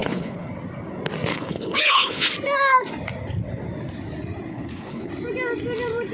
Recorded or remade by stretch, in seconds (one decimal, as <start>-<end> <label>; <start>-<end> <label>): 0.0-0.5 remade; 0.5-1.3 recorded; 1.3-2.3 remade; 2.3-4.5 recorded; 4.5-5.1 remade; 5.1-6.1 recorded